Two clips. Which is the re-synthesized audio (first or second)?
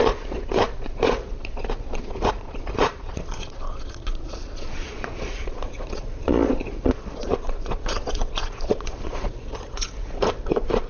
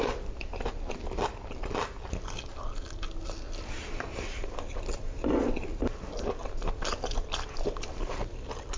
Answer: first